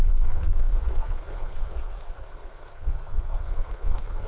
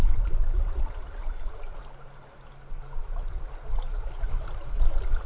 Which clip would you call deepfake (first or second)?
first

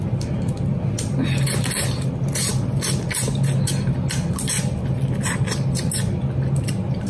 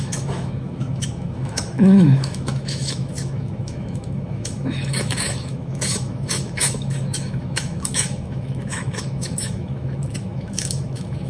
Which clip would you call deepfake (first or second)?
second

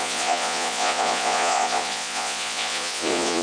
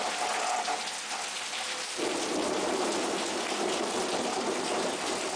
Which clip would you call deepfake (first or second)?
first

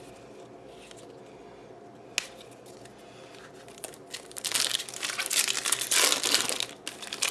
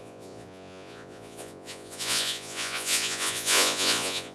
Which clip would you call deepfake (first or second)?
second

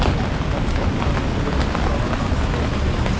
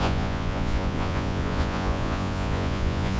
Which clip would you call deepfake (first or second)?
second